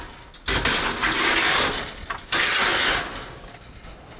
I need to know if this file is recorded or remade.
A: recorded